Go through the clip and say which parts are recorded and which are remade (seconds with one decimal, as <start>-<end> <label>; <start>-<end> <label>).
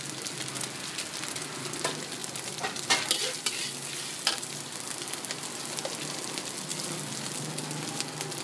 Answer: 0.0-8.4 recorded